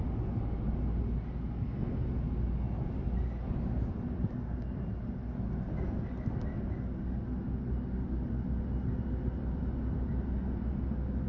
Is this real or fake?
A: real